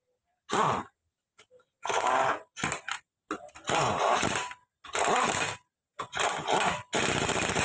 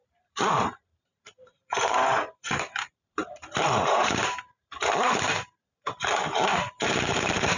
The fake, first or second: second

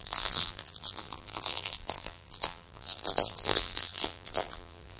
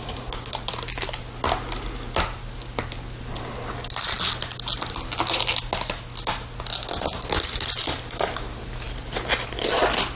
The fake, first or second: first